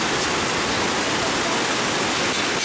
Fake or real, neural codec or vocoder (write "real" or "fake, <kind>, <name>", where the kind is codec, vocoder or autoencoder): real